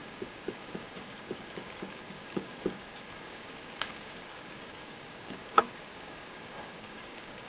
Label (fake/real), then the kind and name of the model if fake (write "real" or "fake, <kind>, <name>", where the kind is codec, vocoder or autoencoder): fake, codec, DAC